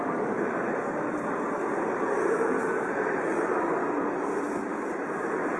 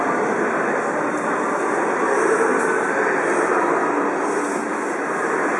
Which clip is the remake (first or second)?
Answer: first